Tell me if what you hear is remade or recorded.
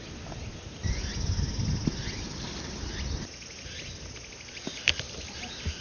recorded